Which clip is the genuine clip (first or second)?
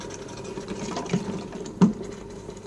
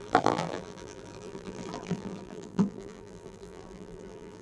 first